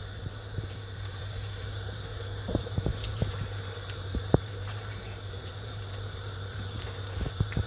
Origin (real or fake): fake